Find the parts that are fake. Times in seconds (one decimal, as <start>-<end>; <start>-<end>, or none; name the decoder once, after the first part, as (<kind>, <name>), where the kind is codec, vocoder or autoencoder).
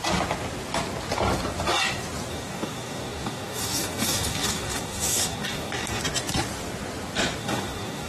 2.3-6.0 (codec, DAC); 7.4-8.1